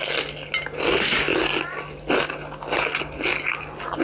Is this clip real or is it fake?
real